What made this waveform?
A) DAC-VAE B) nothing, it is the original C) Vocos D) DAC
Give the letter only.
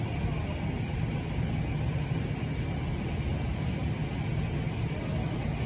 B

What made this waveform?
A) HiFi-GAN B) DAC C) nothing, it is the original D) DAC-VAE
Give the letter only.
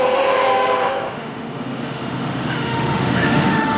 D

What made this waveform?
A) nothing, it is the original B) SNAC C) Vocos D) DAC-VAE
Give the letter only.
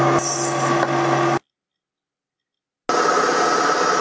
A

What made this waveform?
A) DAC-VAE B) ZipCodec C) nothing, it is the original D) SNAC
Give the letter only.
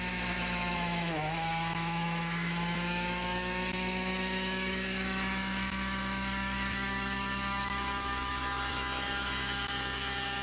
A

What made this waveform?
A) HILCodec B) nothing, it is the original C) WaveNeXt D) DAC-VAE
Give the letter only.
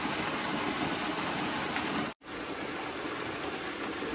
B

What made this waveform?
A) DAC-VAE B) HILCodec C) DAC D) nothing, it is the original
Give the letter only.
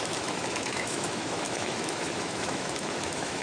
A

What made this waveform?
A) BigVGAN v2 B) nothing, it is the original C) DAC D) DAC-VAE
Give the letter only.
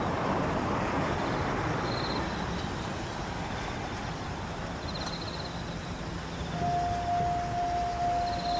B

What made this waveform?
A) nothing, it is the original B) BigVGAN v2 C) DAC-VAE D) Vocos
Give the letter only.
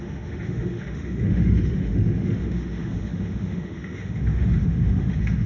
C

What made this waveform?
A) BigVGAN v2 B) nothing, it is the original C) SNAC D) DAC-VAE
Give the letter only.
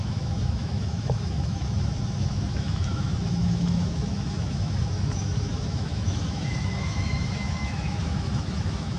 D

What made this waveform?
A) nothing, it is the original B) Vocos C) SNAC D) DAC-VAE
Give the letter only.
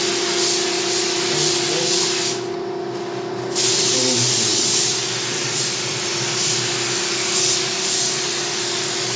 A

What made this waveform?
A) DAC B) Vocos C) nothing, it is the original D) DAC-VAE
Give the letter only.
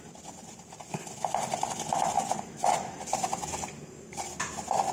C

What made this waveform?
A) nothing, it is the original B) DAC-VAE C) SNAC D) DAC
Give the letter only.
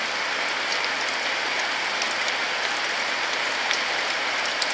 A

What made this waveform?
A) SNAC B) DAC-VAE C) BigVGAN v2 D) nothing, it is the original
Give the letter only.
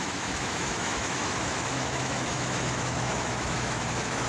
B